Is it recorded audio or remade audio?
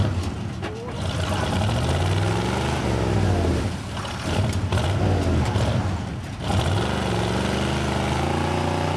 recorded